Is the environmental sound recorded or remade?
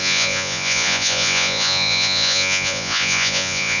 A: remade